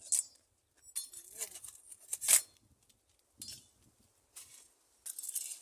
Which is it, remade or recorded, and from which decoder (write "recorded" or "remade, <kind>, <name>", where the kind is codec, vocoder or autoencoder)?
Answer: recorded